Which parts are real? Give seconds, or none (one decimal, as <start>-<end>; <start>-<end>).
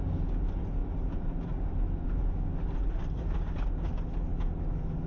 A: 0.0-5.1